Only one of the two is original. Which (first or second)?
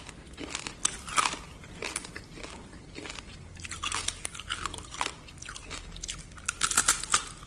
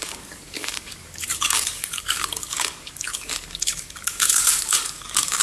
first